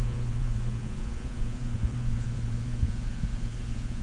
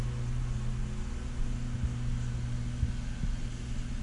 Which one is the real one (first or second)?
second